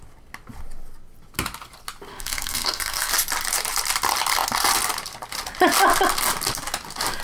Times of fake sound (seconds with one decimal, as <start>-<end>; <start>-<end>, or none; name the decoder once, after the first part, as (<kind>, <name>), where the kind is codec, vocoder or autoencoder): 2.1-3.1 (codec, SNAC)